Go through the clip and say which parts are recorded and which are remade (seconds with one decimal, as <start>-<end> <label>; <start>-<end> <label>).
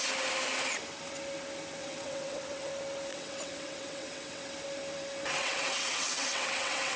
0.0-1.8 recorded; 1.8-2.7 remade; 2.7-3.1 recorded; 3.1-4.5 remade; 4.5-5.4 recorded; 5.4-7.0 remade